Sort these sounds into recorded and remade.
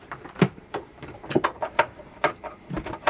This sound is remade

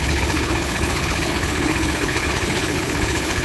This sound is remade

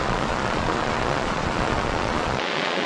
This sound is remade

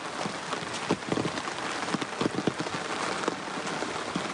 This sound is recorded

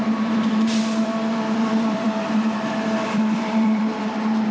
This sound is remade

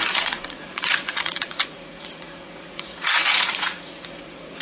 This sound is remade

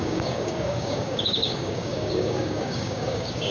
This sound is remade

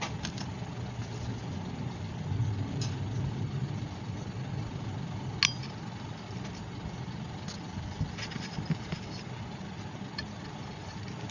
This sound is recorded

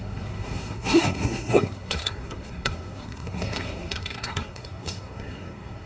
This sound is remade